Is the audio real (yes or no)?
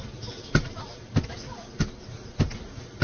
yes